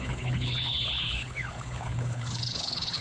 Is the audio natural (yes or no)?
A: no